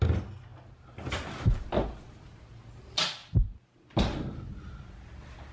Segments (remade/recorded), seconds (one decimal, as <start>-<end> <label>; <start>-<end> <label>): 0.0-5.5 recorded